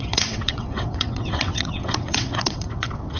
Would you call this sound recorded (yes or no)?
no